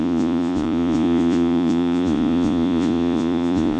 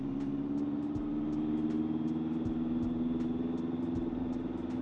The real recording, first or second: second